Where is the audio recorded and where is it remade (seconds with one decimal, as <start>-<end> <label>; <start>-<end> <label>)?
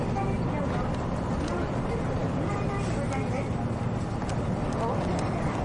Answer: 0.0-5.6 recorded